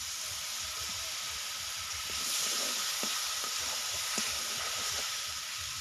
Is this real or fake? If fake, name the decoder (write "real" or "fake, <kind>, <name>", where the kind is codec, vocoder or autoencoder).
real